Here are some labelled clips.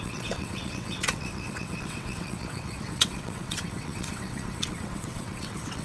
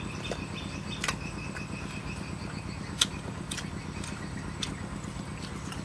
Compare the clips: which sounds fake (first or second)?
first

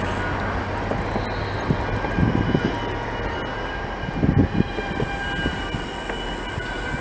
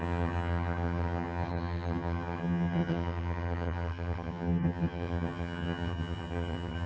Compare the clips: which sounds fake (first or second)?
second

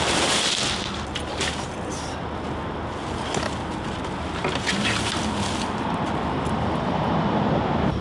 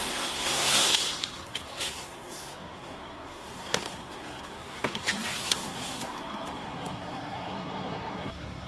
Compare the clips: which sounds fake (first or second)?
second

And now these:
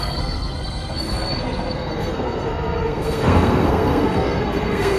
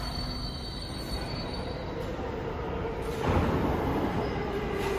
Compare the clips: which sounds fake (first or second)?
first